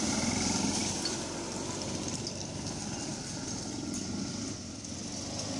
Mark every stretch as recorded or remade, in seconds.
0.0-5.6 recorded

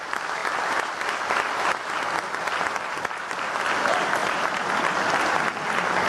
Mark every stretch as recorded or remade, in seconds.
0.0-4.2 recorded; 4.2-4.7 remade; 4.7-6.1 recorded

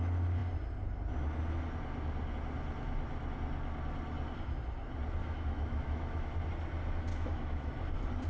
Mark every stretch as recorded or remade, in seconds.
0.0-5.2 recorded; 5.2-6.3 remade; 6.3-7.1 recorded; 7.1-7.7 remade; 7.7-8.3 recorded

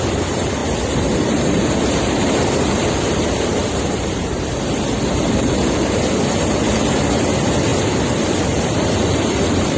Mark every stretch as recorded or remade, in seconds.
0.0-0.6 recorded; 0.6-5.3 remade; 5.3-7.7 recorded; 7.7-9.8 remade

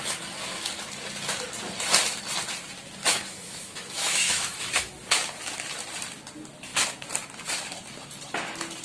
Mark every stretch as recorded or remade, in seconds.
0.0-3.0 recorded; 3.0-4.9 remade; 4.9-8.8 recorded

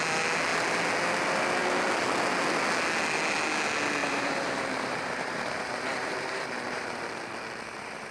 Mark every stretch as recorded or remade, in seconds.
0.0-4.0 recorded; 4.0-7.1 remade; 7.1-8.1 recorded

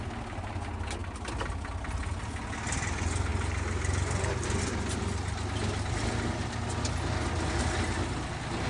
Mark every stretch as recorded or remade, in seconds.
0.0-8.7 recorded

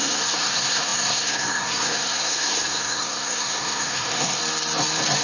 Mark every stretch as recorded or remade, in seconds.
0.0-4.4 remade; 4.4-5.2 recorded